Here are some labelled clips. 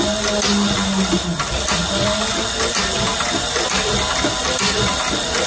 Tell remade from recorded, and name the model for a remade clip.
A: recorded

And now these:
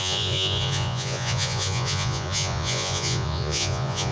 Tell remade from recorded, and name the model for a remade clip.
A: remade, vocoder, Vocos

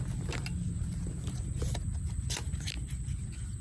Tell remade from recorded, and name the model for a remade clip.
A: recorded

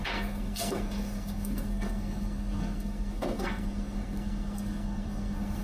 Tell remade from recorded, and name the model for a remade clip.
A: remade, codec, SNAC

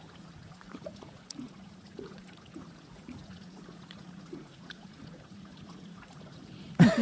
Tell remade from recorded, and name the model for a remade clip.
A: remade, vocoder, Vocos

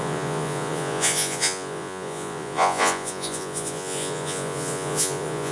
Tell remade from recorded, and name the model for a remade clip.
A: remade, vocoder, Vocos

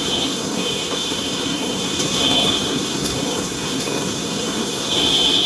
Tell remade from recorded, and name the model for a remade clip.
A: remade, codec, SNAC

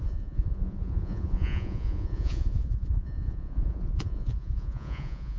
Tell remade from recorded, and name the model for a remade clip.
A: remade, vocoder, Vocos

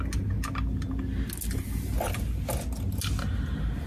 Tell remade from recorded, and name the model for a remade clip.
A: recorded